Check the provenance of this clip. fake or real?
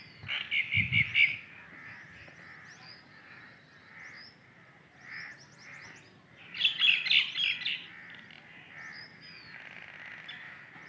real